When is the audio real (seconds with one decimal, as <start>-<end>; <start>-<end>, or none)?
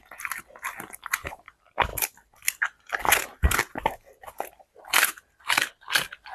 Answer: 0.0-6.3